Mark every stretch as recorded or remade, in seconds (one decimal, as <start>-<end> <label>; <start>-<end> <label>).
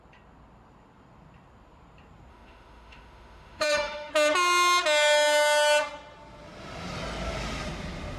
0.0-2.3 recorded; 2.3-4.1 remade; 4.1-8.2 recorded